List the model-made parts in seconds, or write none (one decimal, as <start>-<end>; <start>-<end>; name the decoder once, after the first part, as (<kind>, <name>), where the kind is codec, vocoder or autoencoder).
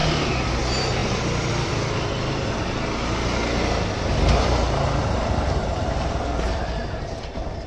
none